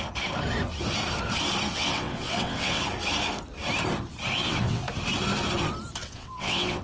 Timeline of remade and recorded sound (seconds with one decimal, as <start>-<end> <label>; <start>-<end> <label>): 0.0-1.7 recorded; 1.7-2.8 remade; 2.8-4.3 recorded; 4.3-4.8 remade; 4.8-6.0 recorded; 6.0-6.8 remade

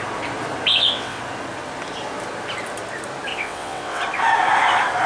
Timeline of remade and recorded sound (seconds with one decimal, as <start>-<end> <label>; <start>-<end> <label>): 0.0-0.7 recorded; 0.7-1.2 remade; 1.2-3.3 recorded; 3.3-4.0 remade; 4.0-5.1 recorded

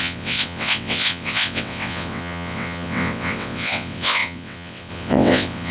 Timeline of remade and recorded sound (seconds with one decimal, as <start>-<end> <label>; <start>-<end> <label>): 0.0-5.7 remade

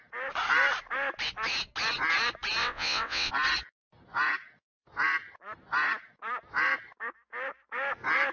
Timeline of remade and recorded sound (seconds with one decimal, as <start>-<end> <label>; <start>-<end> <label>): 0.0-2.6 recorded; 2.6-3.3 remade; 3.3-8.3 recorded